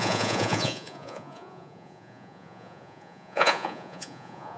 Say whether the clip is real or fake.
fake